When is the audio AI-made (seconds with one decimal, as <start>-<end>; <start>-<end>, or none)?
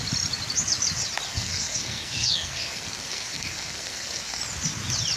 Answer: 1.3-4.4